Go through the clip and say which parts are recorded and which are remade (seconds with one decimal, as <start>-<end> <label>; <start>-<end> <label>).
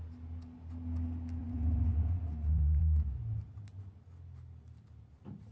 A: 0.0-1.4 recorded; 1.4-2.8 remade; 2.8-5.5 recorded